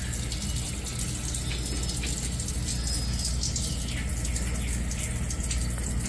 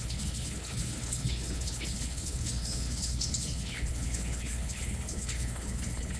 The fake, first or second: second